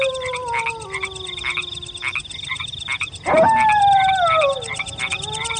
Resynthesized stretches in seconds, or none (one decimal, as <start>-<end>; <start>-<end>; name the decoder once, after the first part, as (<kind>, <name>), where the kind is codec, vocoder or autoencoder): none